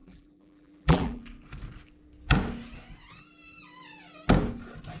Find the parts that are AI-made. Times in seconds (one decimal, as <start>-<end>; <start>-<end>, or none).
0.0-1.2